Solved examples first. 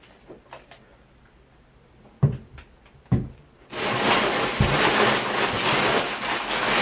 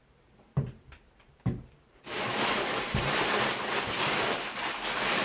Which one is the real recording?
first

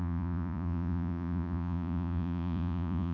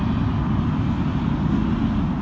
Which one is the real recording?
second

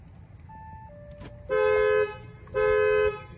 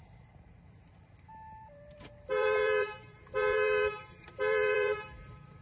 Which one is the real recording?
first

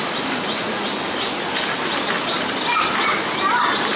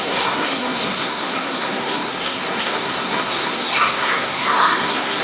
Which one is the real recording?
first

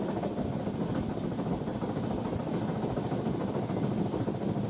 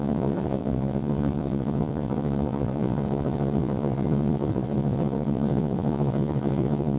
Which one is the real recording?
first